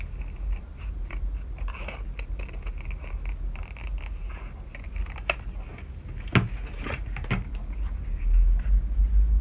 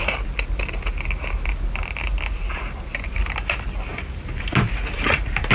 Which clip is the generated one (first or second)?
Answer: second